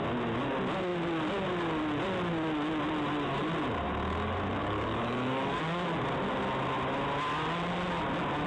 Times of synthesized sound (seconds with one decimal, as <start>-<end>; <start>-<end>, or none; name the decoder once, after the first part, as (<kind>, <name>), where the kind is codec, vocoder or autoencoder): 4.6-5.6 (codec, DAC)